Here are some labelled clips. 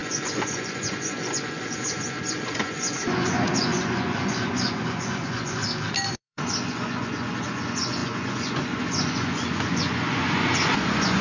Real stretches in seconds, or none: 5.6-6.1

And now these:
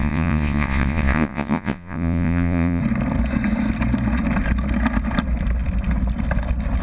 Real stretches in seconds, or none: 2.8-6.8